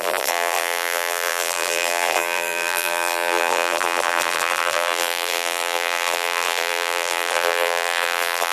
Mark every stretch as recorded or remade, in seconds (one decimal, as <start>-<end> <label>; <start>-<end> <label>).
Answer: 0.0-8.5 remade